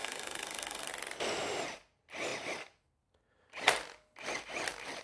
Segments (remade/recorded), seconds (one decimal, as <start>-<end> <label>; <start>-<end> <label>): 0.0-0.9 remade; 0.9-5.0 recorded